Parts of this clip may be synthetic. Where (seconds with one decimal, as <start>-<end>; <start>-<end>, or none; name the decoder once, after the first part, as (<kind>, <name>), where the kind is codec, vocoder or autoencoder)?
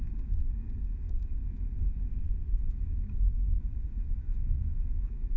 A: 0.0-2.1 (codec, DAC); 2.6-5.4